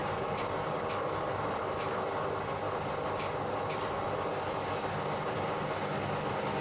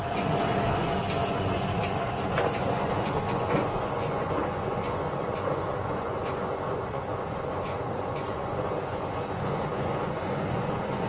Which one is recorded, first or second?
first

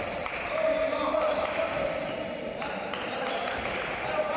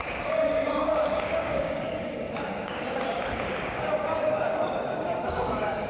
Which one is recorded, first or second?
first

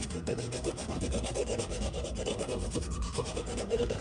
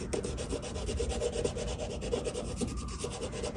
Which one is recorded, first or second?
second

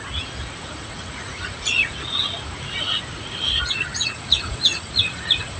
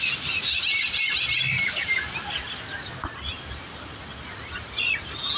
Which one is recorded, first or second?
second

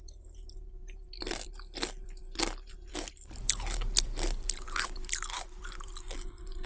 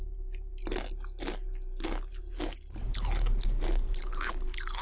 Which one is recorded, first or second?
second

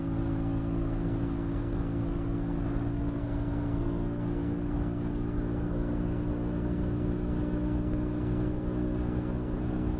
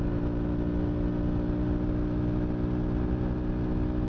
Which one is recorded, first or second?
second